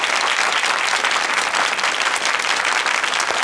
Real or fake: real